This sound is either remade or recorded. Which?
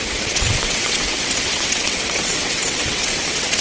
remade